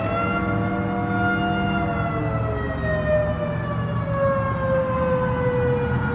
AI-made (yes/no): no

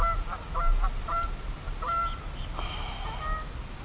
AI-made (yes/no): no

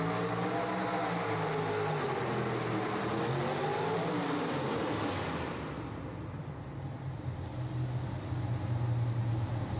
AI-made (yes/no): no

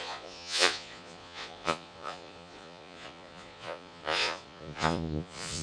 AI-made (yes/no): yes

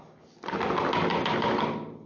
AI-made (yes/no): no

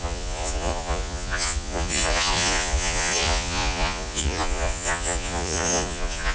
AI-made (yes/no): yes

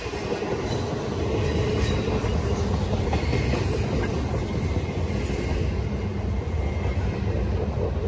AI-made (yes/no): no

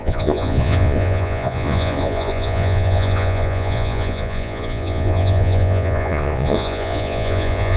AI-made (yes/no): yes